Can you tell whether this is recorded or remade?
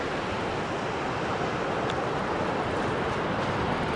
recorded